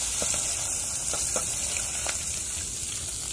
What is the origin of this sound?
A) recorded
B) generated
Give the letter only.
A